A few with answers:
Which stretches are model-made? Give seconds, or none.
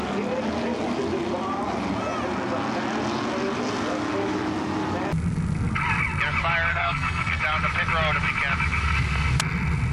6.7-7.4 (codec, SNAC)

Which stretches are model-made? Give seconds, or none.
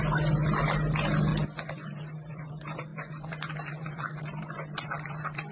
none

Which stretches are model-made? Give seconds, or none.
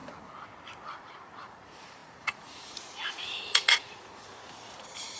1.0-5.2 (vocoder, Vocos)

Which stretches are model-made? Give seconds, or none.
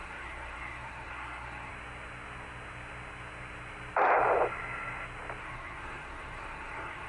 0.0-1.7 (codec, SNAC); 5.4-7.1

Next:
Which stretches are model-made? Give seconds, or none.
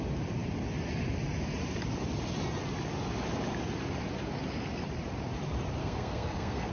5.8-6.7 (codec, SNAC)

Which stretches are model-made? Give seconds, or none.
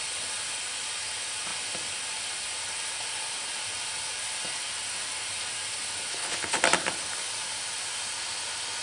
6.1-6.6 (codec, HILCodec)